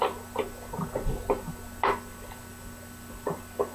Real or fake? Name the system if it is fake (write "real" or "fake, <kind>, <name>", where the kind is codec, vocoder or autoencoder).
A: real